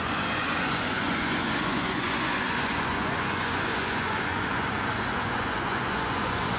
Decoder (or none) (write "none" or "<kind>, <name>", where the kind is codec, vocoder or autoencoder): vocoder, Vocos